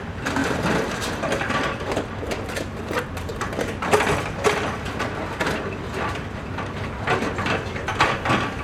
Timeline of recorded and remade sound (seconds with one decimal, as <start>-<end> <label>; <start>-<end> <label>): 0.0-0.4 recorded; 0.4-2.8 remade; 2.8-3.3 recorded; 3.3-5.3 remade; 5.3-8.6 recorded